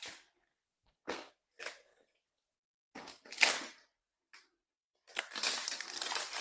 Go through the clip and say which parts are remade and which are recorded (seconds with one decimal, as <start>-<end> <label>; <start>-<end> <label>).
0.0-0.5 recorded; 0.5-1.3 remade; 1.3-6.4 recorded